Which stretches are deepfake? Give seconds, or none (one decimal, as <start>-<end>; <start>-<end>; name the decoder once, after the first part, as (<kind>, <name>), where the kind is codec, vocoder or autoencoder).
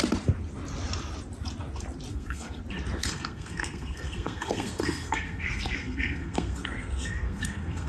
2.1-2.6 (codec, SNAC); 3.0-7.9